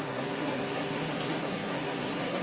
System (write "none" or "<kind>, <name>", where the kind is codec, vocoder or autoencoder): codec, SNAC